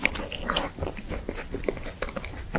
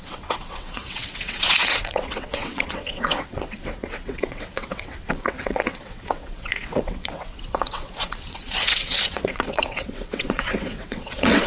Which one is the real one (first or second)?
first